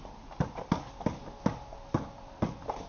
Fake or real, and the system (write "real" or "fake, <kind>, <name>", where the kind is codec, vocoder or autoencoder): real